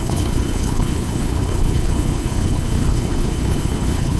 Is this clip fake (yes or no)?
yes